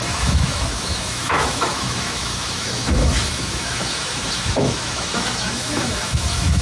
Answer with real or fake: fake